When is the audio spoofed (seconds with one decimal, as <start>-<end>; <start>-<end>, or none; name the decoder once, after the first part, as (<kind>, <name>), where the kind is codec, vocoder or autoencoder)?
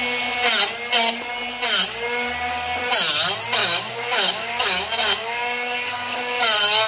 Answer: 3.6-6.4 (codec, DAC)